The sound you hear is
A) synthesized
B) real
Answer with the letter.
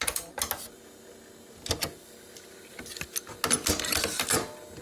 B